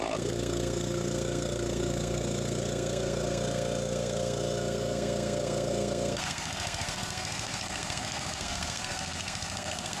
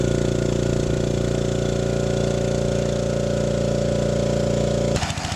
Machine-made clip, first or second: first